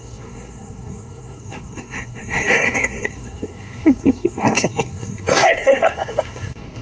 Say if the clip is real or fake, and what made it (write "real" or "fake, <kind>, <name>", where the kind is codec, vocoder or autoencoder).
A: fake, codec, SNAC